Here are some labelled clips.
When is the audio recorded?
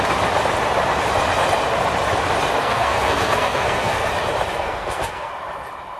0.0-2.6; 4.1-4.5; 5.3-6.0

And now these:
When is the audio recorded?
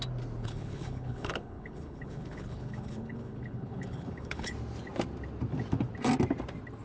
0.0-0.4; 4.5-6.8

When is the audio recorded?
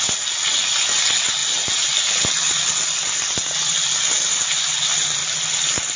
0.0-6.0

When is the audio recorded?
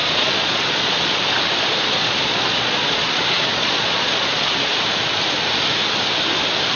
1.2-2.0; 4.8-6.8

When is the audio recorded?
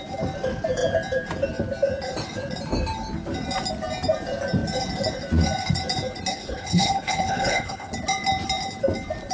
0.0-6.3; 7.9-9.3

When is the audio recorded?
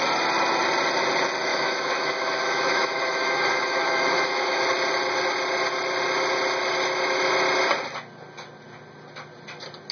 0.0-1.5; 4.6-9.9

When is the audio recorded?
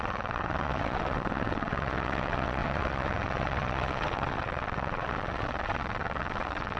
none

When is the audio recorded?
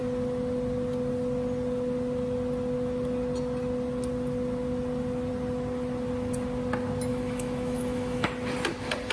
0.0-7.1; 8.3-9.1